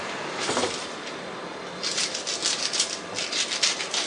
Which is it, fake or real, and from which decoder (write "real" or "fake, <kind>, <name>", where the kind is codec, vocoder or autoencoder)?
fake, vocoder, BigVGAN v2